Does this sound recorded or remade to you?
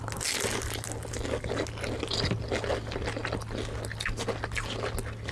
recorded